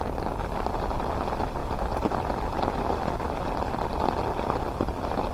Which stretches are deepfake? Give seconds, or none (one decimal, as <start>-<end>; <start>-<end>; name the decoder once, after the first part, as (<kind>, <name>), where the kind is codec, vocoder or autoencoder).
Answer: 1.6-4.2 (vocoder, BigVGAN v2)